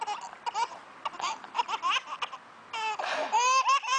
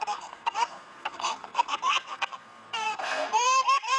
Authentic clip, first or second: first